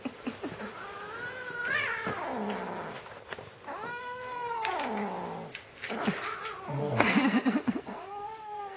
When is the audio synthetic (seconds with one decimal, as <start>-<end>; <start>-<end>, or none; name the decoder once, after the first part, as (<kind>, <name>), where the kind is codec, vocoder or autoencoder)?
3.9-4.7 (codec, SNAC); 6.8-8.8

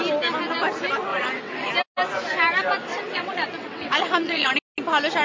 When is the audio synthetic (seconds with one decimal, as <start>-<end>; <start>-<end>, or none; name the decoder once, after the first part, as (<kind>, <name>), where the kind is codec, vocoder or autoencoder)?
1.1-1.7 (vocoder, WaveNeXt); 2.9-4.5

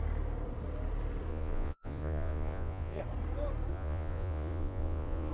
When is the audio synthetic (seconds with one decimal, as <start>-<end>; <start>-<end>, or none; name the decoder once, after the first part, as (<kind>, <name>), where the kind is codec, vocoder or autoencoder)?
1.3-3.0 (vocoder, Vocos); 3.7-5.3

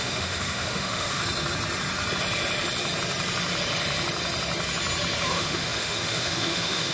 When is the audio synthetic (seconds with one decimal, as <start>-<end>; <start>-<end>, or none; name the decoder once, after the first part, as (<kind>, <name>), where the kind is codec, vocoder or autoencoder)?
0.0-1.2 (autoencoder, DAC-VAE); 5.3-6.9

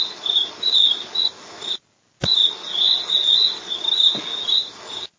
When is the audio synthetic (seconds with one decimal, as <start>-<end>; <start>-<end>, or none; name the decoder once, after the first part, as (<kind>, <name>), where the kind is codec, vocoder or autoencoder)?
2.7-3.7 (vocoder, Vocos)